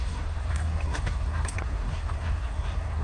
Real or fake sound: fake